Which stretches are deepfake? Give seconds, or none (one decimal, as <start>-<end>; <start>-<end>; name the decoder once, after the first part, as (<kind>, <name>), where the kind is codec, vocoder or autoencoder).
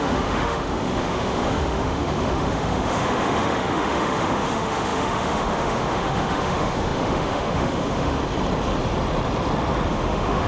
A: 0.0-8.2 (autoencoder, DAC-VAE); 9.9-10.5